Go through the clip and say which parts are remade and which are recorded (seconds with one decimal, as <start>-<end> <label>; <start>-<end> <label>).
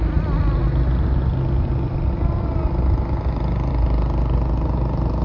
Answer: 0.0-5.2 recorded